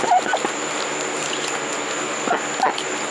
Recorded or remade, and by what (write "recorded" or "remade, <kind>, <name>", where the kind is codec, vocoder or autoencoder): recorded